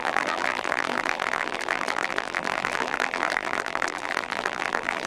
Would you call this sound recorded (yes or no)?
no